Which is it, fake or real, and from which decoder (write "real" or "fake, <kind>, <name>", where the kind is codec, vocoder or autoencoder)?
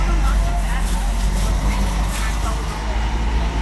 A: real